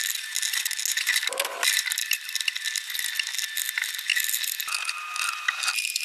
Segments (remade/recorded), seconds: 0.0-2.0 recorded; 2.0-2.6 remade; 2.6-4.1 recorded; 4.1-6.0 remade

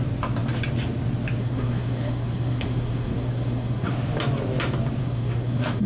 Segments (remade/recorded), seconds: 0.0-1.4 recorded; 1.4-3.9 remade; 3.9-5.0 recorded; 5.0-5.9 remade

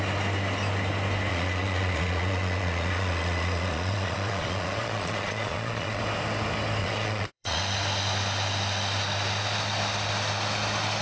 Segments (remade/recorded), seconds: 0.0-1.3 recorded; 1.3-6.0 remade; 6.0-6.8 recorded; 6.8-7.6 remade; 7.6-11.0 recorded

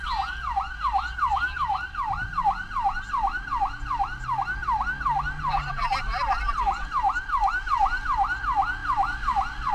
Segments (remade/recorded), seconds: 0.0-9.7 recorded